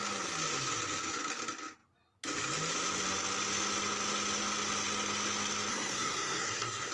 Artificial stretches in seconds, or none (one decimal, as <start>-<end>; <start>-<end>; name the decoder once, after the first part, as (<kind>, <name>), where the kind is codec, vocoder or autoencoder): 5.7-6.9 (codec, SNAC)